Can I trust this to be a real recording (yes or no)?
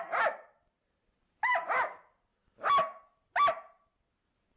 yes